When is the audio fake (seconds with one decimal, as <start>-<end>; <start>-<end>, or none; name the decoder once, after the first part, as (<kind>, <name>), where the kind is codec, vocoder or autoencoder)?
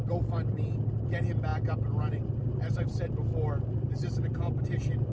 none